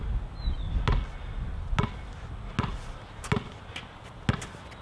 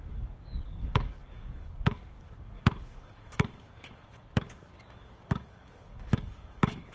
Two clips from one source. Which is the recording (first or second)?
first